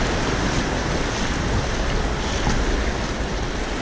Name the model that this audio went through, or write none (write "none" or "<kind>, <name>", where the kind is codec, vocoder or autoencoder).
none